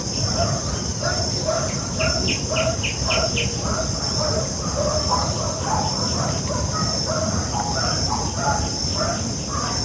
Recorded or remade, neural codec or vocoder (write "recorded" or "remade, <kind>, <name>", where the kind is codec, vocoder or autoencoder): recorded